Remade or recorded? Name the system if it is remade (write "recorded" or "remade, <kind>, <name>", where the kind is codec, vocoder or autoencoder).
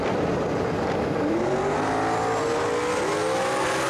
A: recorded